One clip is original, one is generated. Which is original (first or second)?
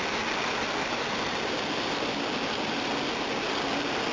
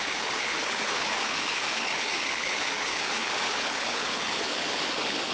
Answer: first